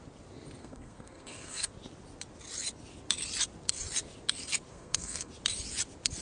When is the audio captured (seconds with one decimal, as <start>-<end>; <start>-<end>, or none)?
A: 0.0-0.6; 1.7-4.7; 5.3-6.2